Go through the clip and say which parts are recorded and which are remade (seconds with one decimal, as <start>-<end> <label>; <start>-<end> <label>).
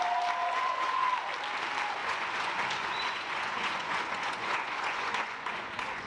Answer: 0.0-0.4 recorded; 0.4-1.1 remade; 1.1-2.0 recorded; 2.0-6.1 remade